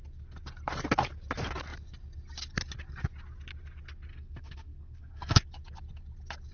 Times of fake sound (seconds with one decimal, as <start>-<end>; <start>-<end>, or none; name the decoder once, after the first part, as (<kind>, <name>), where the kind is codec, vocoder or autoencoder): 4.1-5.4 (codec, SNAC)